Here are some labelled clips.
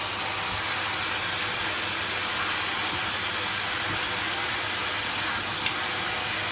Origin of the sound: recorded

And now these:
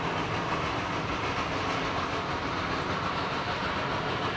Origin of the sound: recorded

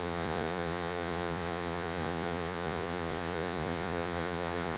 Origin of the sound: remade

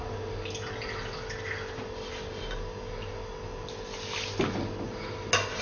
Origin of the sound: recorded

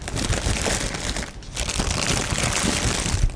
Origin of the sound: recorded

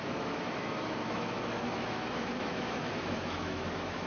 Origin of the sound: remade